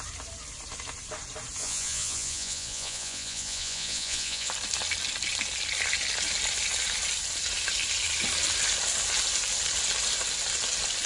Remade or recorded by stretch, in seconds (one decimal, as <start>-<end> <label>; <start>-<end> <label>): 0.0-1.6 recorded; 1.6-4.5 remade; 4.5-11.1 recorded